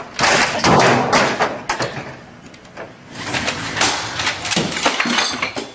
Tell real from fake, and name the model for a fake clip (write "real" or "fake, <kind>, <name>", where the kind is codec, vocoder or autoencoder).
real